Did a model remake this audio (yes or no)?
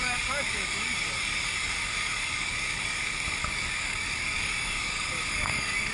yes